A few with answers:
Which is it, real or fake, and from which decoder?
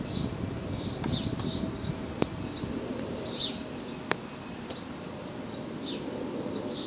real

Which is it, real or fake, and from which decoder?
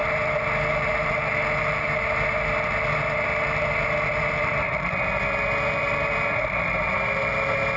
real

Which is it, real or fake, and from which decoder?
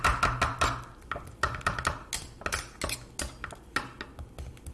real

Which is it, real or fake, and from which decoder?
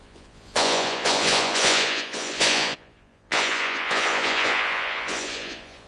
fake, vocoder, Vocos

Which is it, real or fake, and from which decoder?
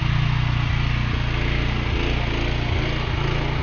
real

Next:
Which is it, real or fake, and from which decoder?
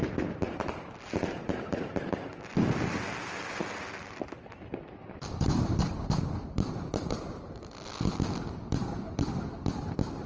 real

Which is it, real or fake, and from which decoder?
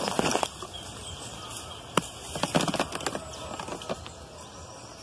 real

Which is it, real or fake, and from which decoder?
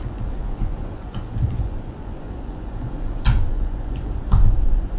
fake, vocoder, Vocos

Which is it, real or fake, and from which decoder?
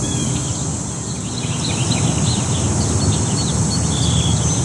real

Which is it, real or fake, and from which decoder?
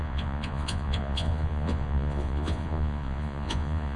fake, vocoder, Vocos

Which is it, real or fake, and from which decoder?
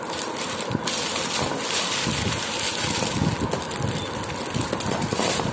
real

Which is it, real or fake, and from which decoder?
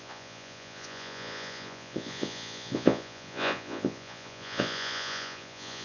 fake, vocoder, Vocos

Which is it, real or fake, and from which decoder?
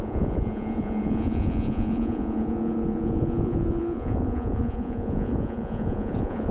fake, vocoder, Vocos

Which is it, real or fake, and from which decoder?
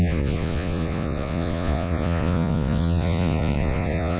fake, vocoder, Vocos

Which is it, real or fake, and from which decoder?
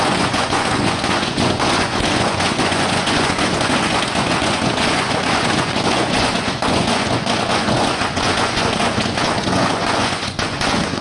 fake, vocoder, Vocos